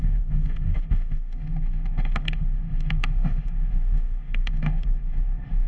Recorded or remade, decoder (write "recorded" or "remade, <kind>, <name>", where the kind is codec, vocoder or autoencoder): remade, autoencoder, DAC-VAE